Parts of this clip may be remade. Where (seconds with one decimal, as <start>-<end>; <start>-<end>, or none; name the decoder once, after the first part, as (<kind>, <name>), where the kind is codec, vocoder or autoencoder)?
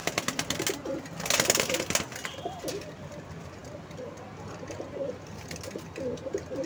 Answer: none